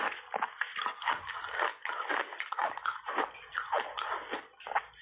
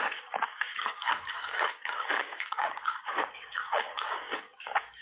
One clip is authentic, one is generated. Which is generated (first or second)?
second